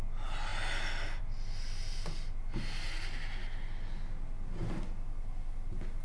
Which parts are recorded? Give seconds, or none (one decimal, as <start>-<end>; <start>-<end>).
0.0-6.0